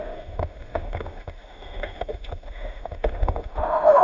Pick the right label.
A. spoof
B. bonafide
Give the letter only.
A